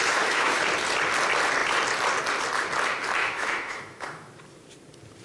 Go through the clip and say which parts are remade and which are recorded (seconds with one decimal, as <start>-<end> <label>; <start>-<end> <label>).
0.0-0.6 remade; 0.6-3.2 recorded; 3.2-4.3 remade; 4.3-5.2 recorded